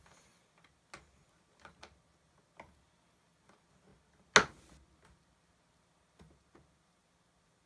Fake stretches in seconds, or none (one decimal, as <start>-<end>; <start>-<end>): none